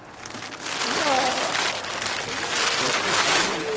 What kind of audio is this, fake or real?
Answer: real